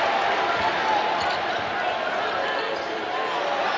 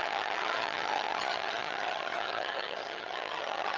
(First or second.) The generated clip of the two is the second